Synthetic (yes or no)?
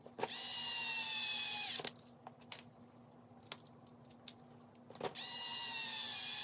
no